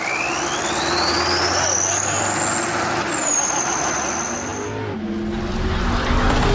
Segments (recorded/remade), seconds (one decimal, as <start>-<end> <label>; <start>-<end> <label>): 0.0-6.5 recorded